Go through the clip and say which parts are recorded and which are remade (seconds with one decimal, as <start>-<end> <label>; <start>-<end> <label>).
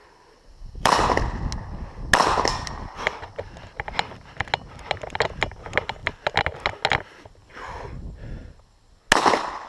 0.0-1.2 remade; 1.2-9.7 recorded